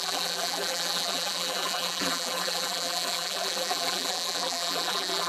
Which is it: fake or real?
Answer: fake